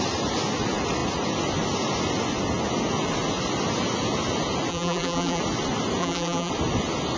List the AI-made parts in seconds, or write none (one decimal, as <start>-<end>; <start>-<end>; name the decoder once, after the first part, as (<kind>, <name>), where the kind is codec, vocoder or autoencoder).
4.7-5.4 (vocoder, BigVGAN v2); 6.0-6.5